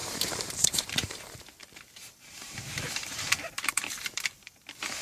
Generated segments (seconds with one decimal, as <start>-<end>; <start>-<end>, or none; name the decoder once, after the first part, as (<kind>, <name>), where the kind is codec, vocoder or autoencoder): 0.0-1.2 (vocoder, BigVGAN v2); 1.6-4.6